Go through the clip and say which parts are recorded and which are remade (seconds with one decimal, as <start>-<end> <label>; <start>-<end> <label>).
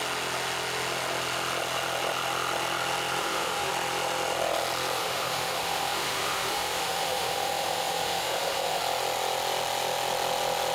0.0-3.2 recorded; 3.2-3.7 remade; 3.7-5.0 recorded; 5.0-8.8 remade; 8.8-10.7 recorded